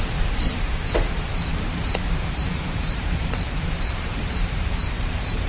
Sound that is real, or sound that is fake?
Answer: fake